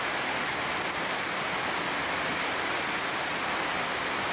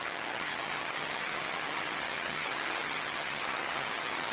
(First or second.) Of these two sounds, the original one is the first